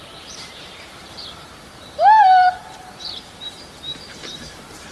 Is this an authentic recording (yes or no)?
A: no